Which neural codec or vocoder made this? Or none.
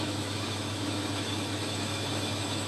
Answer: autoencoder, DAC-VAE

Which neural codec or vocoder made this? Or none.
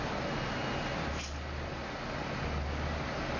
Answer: none